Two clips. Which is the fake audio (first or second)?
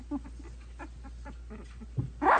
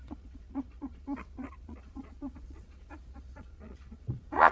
second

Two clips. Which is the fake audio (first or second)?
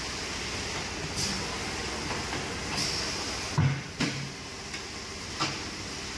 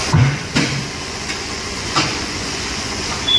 second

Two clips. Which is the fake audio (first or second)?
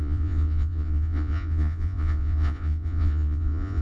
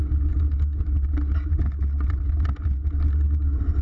first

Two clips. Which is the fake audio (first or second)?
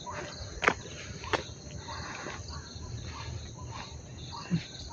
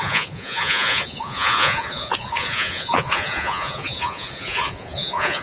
second